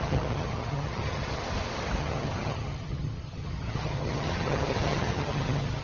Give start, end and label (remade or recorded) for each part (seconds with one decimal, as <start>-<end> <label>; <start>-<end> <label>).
0.0-1.4 remade; 1.4-2.0 recorded; 2.0-5.8 remade